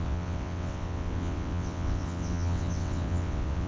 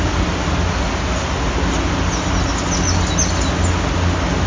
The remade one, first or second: first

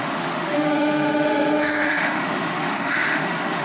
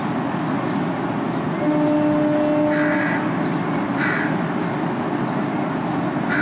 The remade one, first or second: first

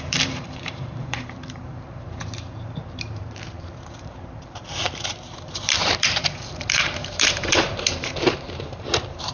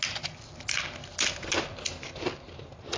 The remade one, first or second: first